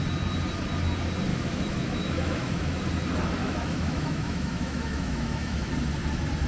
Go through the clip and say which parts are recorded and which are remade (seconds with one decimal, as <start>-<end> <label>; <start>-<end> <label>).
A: 0.0-1.3 recorded; 1.3-2.8 remade; 2.8-3.4 recorded; 3.4-5.7 remade; 5.7-6.5 recorded